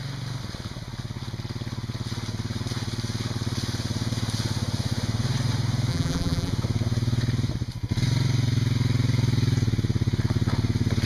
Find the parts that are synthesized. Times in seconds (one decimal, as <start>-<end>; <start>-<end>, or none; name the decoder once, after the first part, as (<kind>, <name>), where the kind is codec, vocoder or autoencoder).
5.9-6.5 (vocoder, BigVGAN v2)